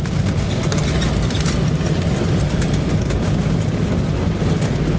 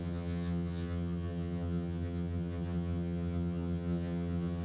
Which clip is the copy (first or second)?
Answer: second